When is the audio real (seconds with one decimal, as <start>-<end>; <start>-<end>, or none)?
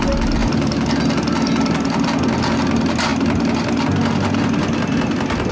0.0-5.5